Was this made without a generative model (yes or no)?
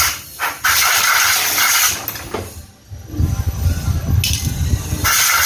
yes